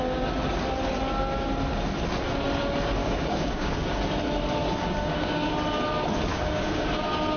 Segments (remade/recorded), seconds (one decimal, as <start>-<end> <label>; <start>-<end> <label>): 0.0-3.0 recorded; 3.0-4.0 remade; 4.0-4.6 recorded; 4.6-5.5 remade; 5.5-6.3 recorded; 6.3-6.9 remade; 6.9-7.4 recorded